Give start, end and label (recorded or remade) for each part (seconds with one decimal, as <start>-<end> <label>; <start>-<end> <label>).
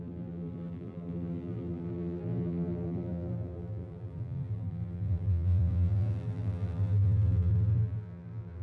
0.0-8.6 remade